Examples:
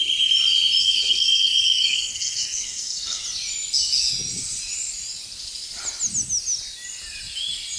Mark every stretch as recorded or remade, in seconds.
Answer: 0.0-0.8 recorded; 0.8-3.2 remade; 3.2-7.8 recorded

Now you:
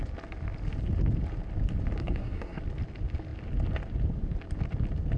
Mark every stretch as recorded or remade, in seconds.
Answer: 0.0-2.0 recorded; 2.0-2.6 remade; 2.6-5.2 recorded

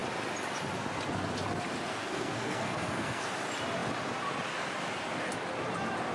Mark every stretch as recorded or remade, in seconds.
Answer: 0.0-1.9 recorded; 1.9-3.3 remade; 3.3-6.1 recorded

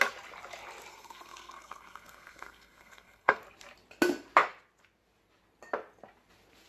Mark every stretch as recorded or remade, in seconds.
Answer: 0.0-0.9 recorded; 0.9-3.4 remade; 3.4-6.7 recorded

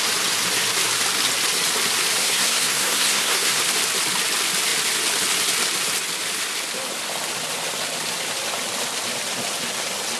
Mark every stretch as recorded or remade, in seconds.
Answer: 0.0-2.2 recorded; 2.2-3.6 remade; 3.6-10.2 recorded

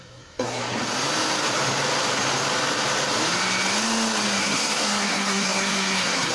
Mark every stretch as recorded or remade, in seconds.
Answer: 0.0-0.6 remade; 0.6-4.4 recorded; 4.4-6.3 remade

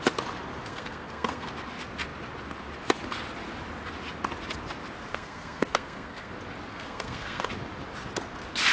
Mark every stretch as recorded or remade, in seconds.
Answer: 0.0-0.7 recorded; 0.7-1.5 remade; 1.5-5.1 recorded; 5.1-6.3 remade; 6.3-6.7 recorded; 6.7-7.5 remade; 7.5-8.7 recorded

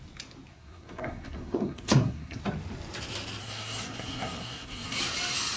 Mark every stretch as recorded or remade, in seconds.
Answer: 0.0-0.5 recorded; 0.5-2.4 remade; 2.4-3.4 recorded; 3.4-5.0 remade; 5.0-5.6 recorded